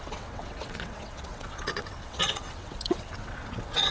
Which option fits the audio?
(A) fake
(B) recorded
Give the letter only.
A